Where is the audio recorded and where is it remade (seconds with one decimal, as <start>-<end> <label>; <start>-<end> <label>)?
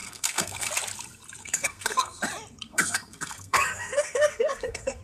0.0-0.7 remade; 0.7-1.4 recorded; 1.4-2.2 remade; 2.2-2.7 recorded; 2.7-5.0 remade